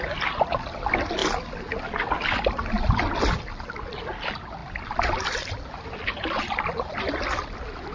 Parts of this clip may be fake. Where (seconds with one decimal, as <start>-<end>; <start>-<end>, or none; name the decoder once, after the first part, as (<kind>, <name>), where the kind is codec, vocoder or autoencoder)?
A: none